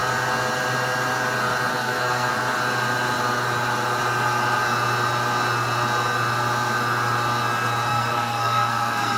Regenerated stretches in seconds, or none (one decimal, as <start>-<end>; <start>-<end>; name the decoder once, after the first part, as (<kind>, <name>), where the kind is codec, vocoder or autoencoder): 1.7-2.3 (codec, SNAC); 7.9-9.2